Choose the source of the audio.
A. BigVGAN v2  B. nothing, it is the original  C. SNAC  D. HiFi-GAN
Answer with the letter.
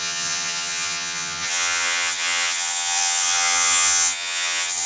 D